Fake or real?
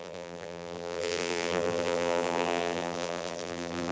fake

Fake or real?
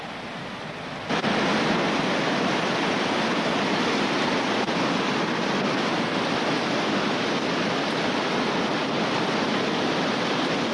real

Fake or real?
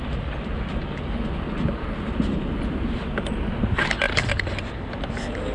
real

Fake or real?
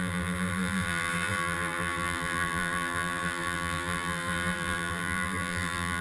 fake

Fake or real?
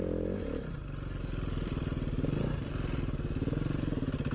fake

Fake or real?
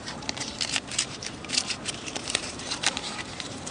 fake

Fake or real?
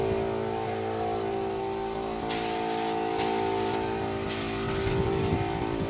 real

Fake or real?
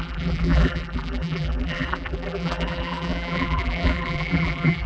fake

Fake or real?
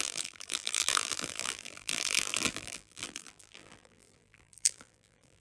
fake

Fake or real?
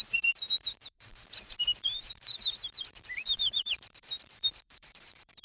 fake